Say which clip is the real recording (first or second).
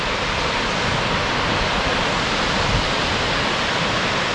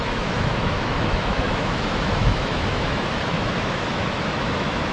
first